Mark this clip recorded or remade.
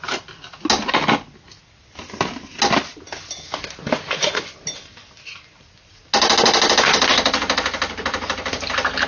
recorded